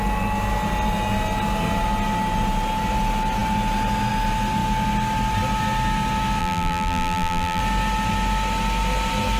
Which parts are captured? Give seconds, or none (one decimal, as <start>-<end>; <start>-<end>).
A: 0.0-6.4; 7.6-9.4